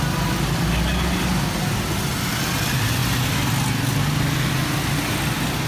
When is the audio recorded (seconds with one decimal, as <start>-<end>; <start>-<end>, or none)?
0.0-5.7